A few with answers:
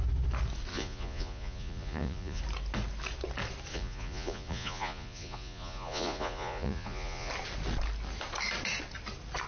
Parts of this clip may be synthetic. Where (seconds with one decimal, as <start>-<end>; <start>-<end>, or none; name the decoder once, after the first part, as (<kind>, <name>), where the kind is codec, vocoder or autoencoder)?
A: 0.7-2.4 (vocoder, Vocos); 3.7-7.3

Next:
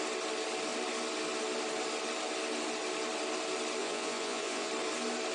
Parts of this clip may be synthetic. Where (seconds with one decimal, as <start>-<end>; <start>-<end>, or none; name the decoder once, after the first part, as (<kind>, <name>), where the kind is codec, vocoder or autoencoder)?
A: 3.8-4.7 (vocoder, Vocos)

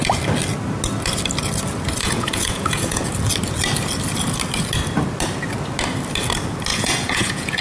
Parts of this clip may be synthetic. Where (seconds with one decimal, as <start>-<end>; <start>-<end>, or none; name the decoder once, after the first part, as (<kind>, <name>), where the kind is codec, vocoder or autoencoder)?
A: 2.0-3.1 (vocoder, Vocos); 6.7-7.6

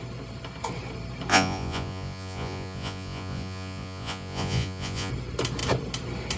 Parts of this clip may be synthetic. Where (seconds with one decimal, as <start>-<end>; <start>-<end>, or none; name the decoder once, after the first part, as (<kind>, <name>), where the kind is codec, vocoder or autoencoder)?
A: 1.3-5.1 (vocoder, Vocos)

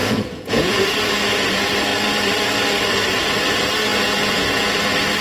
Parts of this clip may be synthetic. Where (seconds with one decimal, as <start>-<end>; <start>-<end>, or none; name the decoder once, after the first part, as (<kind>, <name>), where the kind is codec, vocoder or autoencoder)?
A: 0.0-0.7 (vocoder, Vocos); 3.9-4.7

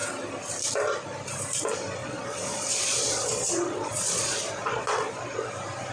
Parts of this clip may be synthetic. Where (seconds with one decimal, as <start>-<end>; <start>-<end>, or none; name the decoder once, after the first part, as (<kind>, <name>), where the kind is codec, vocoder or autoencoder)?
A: 2.0-5.5 (vocoder, Vocos)

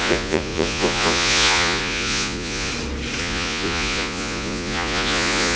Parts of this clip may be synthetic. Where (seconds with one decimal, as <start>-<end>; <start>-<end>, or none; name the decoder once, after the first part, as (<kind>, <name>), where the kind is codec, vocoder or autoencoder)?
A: 0.0-2.7 (vocoder, Vocos); 3.2-5.6